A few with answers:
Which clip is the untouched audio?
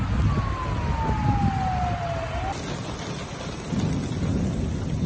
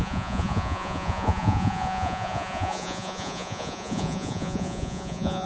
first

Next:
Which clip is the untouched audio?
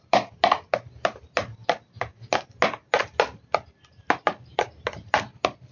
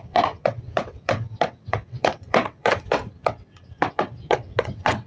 first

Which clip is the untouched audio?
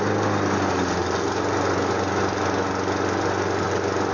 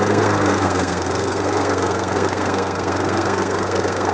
first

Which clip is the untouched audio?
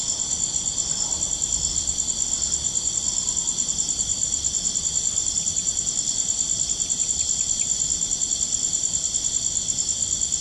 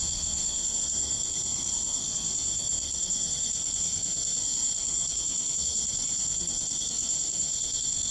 first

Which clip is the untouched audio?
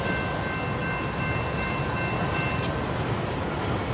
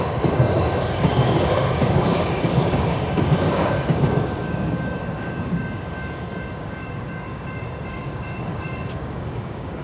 first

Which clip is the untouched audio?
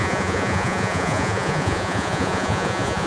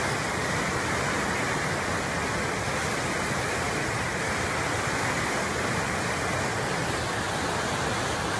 second